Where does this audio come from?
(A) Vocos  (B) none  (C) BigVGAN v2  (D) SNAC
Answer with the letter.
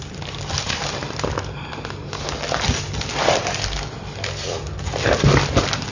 B